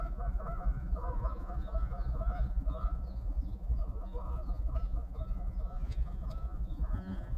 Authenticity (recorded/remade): remade